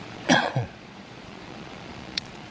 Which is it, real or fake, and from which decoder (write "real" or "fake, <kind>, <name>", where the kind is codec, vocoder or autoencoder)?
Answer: fake, vocoder, Vocos